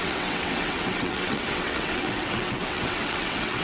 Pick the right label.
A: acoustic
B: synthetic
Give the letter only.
B